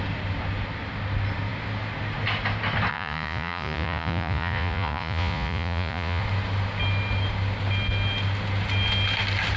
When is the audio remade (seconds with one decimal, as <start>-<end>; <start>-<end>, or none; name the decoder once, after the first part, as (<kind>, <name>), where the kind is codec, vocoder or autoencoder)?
2.9-6.2 (vocoder, Vocos)